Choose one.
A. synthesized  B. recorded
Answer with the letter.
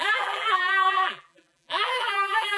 A